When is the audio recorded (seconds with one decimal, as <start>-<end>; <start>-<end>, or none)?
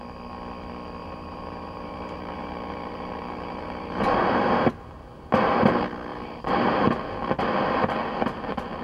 0.0-1.0; 4.7-6.1; 6.7-8.8